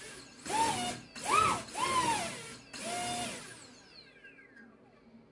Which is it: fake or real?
real